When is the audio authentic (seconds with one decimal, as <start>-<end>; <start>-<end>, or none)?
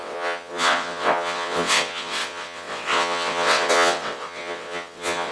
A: none